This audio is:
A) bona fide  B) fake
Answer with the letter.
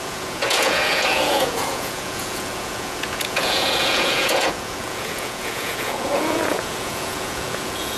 B